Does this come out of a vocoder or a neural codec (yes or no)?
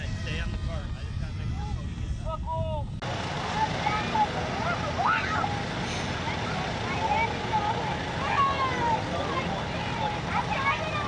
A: no